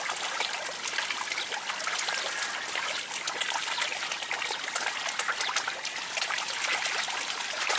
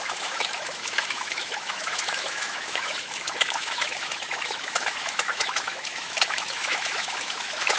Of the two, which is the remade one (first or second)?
second